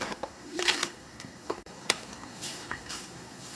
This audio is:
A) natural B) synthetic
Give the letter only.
B